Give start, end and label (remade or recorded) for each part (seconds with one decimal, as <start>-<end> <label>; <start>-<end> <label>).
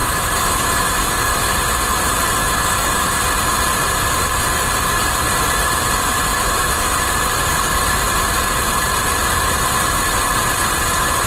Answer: 0.0-1.6 remade; 1.6-2.4 recorded; 2.4-3.2 remade; 3.2-6.3 recorded; 6.3-7.1 remade; 7.1-11.3 recorded